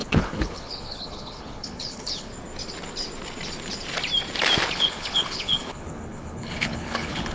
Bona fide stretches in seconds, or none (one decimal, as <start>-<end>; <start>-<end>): 2.3-4.7